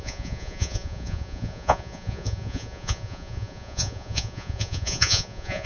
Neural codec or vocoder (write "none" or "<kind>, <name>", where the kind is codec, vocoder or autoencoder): vocoder, Vocos